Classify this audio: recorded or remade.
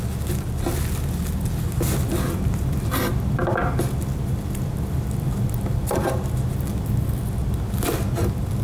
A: recorded